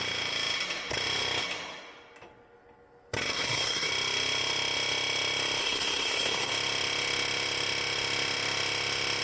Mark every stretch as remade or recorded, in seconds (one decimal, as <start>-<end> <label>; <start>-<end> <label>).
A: 0.0-3.3 recorded; 3.3-3.9 remade; 3.9-5.6 recorded; 5.6-6.5 remade; 6.5-9.2 recorded